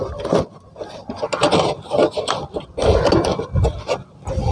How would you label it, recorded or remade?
recorded